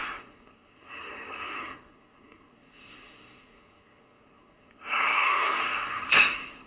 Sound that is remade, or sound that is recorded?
remade